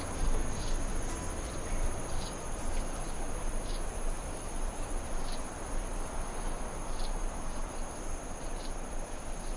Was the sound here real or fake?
fake